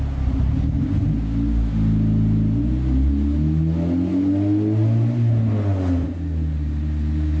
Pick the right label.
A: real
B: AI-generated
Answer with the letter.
A